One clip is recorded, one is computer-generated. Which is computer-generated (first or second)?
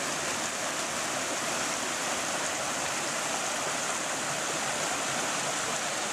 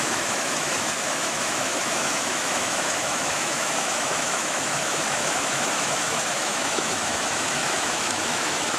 second